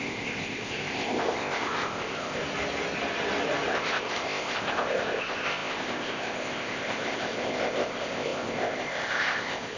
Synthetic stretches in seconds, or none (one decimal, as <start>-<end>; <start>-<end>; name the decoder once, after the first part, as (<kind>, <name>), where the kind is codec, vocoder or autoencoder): 0.0-2.4 (codec, ZipCodec); 3.7-9.8